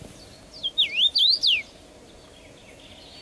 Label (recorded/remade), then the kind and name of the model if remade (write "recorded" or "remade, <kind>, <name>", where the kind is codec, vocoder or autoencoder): recorded